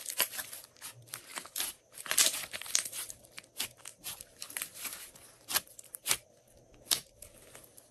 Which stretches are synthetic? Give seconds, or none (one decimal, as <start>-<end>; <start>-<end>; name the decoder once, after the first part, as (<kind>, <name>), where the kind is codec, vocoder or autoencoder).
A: 3.9-4.9 (vocoder, BigVGAN v2)